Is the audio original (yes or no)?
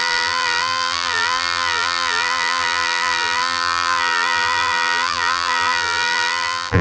no